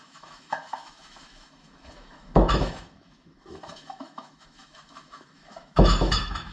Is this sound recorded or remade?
remade